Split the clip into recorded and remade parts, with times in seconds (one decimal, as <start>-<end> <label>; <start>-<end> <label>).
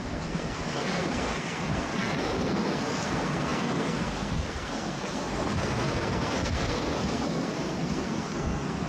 0.0-8.9 remade